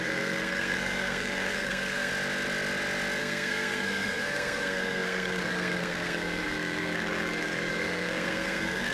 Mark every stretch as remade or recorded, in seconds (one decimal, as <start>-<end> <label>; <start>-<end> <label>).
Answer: 0.0-2.1 remade; 2.1-3.2 recorded; 3.2-8.9 remade